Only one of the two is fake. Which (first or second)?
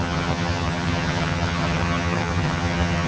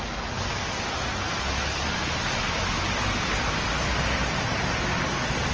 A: first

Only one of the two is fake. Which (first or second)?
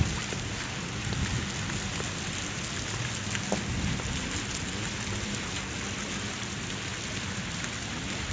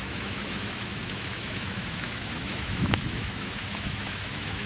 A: second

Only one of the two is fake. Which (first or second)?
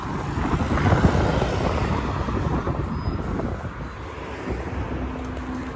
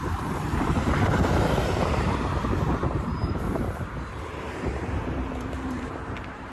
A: second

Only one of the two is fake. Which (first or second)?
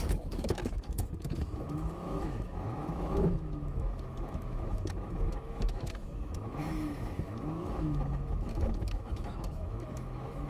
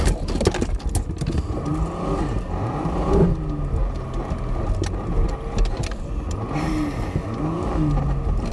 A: first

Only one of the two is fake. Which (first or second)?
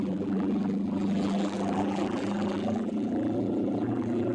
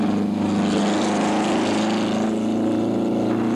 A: first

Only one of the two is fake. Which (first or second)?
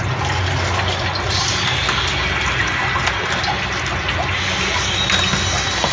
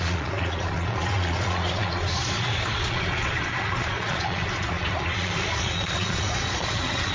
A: second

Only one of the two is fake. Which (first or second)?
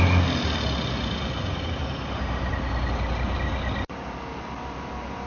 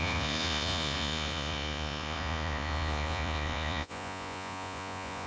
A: second